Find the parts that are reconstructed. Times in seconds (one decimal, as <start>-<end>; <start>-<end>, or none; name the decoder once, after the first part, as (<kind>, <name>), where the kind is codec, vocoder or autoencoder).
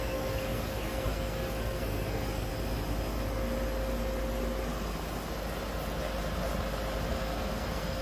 0.0-2.5 (codec, SNAC); 7.1-8.0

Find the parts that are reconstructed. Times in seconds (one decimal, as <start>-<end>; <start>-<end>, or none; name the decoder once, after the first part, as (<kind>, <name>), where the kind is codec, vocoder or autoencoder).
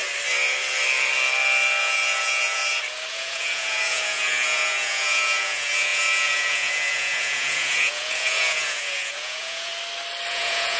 1.8-2.6 (vocoder, Vocos); 3.1-9.7; 10.3-10.8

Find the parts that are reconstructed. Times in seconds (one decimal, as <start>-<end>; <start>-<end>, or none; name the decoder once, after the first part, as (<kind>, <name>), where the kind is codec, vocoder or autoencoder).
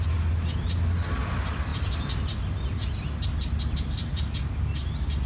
none